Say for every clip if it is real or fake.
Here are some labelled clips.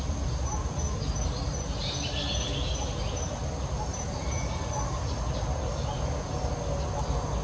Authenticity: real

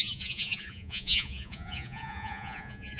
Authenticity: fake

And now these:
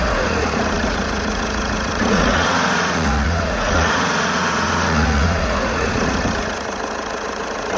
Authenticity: fake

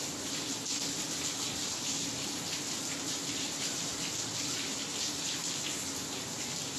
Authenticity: real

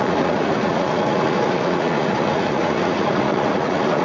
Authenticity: fake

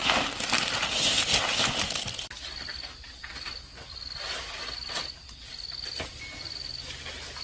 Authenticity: real